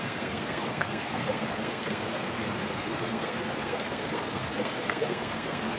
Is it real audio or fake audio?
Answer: fake